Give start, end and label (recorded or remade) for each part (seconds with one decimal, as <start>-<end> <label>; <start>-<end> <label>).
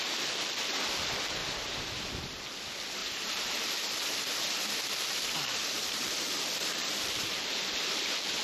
0.0-1.4 recorded; 1.4-2.2 remade; 2.2-3.0 recorded; 3.0-3.7 remade; 3.7-5.6 recorded; 5.6-8.4 remade